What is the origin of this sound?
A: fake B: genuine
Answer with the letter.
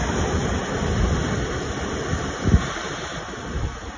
B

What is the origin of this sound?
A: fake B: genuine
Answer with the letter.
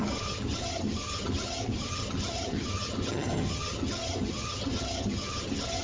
A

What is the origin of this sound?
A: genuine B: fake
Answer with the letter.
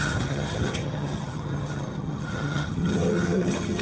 B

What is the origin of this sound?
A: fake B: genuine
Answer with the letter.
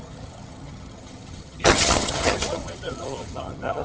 A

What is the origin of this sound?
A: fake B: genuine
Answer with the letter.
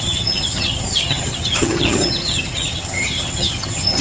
A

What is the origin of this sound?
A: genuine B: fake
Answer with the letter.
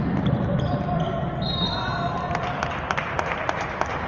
A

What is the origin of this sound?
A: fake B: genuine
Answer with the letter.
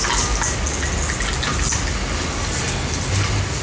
B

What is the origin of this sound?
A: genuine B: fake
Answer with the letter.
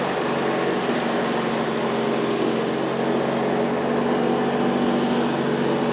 A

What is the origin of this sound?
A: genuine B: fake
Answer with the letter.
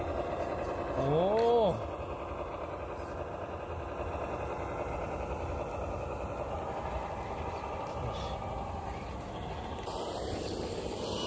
A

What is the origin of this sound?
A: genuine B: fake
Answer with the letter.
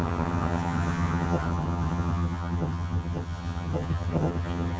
B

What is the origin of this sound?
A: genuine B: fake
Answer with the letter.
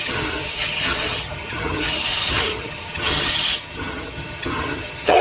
B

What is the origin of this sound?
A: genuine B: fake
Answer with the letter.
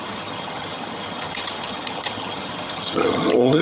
B